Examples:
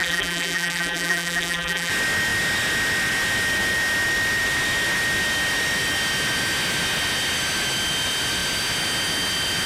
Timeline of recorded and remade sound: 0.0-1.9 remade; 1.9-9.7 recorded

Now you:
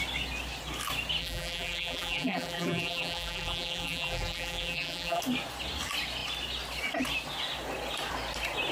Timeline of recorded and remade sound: 0.0-1.2 recorded; 1.2-5.2 remade; 5.2-8.7 recorded

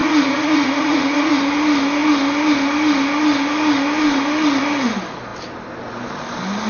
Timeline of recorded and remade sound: 0.0-1.4 remade; 1.4-6.7 recorded

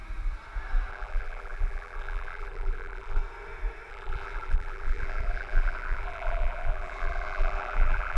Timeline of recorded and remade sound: 0.0-0.9 recorded; 0.9-3.2 remade; 3.2-3.9 recorded; 3.9-8.2 remade

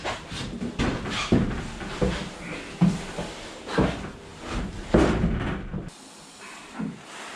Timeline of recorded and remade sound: 0.0-7.4 recorded

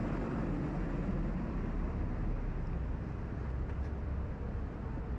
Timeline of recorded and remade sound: 0.0-5.2 recorded

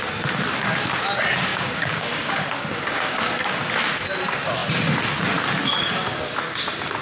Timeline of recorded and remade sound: 0.0-1.5 recorded; 1.5-3.7 remade; 3.7-7.0 recorded

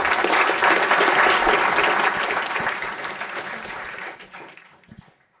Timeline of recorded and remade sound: 0.0-5.4 recorded